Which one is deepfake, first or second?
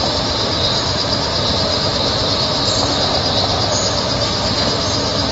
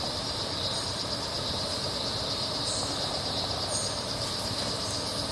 second